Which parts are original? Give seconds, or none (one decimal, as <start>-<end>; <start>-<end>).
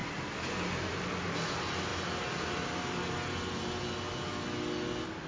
0.0-5.3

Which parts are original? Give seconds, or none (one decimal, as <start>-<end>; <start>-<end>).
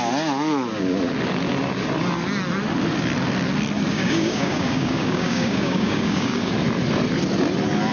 0.0-3.9; 6.5-7.9